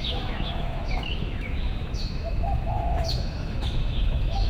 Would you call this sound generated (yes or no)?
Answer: yes